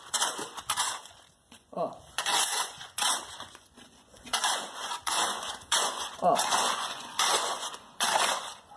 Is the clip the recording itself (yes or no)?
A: no